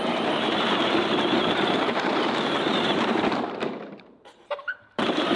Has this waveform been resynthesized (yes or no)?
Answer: yes